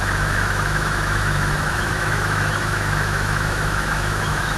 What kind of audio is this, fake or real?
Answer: fake